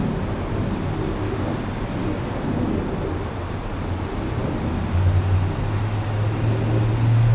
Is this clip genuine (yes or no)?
yes